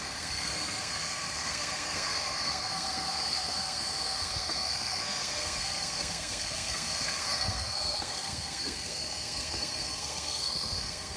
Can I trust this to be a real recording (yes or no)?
no